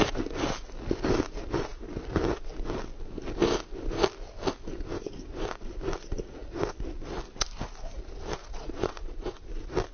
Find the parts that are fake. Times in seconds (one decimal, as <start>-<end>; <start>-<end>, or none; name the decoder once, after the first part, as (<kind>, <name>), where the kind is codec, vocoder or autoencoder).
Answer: 8.4-9.4 (vocoder, Vocos)